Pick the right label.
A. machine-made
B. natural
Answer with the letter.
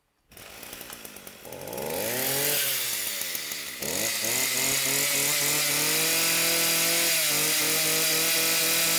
B